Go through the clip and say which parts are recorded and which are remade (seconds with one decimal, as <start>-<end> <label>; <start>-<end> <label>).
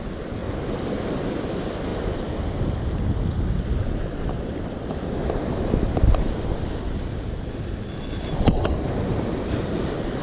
0.0-10.2 recorded